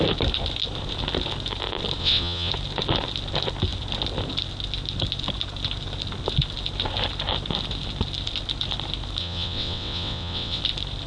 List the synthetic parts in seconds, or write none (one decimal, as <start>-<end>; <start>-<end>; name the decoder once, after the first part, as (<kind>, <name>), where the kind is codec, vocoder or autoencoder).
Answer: 2.0-2.5 (vocoder, WaveNeXt); 9.2-10.6